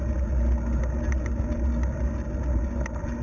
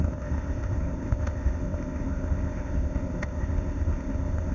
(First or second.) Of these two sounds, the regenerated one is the second